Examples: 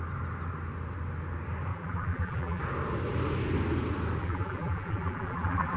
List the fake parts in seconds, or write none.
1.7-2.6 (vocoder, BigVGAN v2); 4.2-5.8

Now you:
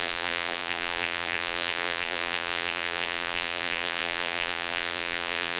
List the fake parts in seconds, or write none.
0.0-5.6 (vocoder, BigVGAN v2)

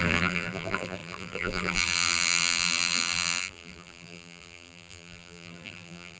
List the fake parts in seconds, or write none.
0.0-6.2 (vocoder, BigVGAN v2)

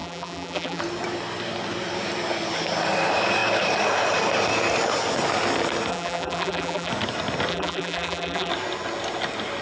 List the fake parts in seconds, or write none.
0.0-0.8 (vocoder, BigVGAN v2); 5.9-6.9; 7.5-8.5

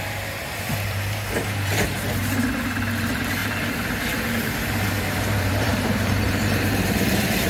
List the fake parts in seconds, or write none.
0.0-2.2 (vocoder, BigVGAN v2); 3.0-7.5